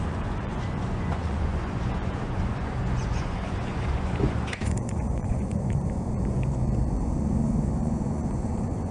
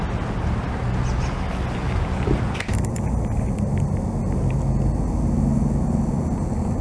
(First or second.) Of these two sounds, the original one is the second